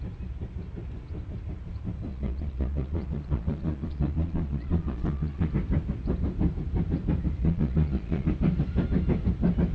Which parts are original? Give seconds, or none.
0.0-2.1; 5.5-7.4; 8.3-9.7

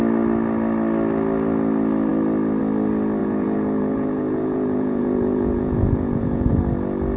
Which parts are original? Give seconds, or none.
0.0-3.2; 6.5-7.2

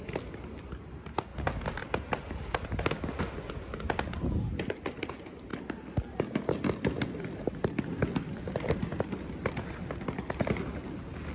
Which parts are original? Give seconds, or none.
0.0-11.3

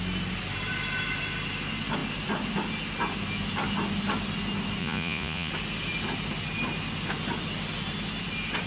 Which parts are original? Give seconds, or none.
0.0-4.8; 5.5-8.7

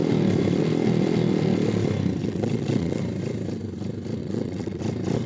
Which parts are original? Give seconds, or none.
0.0-2.2; 3.0-4.2; 4.8-5.3

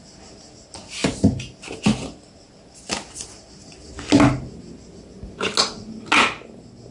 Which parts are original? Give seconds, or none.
0.0-6.9

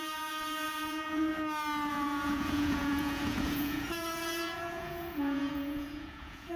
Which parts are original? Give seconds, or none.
1.3-1.9

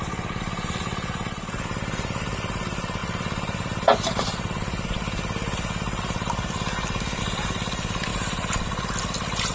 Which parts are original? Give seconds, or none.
0.0-9.5